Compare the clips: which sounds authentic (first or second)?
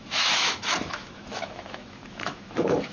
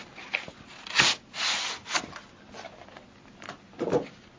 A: second